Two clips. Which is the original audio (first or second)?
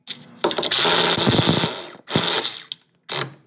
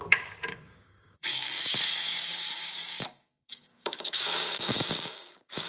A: first